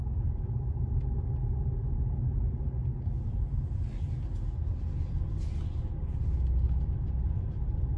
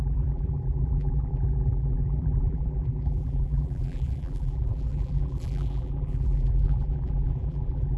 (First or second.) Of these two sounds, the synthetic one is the second